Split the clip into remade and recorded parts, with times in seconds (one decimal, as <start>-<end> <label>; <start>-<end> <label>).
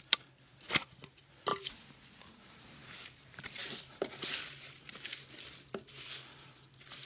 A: 0.0-1.5 recorded; 1.5-5.4 remade; 5.4-7.1 recorded